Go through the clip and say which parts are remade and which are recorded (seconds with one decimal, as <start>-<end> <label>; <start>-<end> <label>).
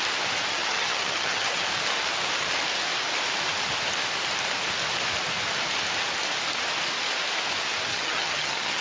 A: 0.0-0.5 recorded; 0.5-1.7 remade; 1.7-7.9 recorded; 7.9-8.8 remade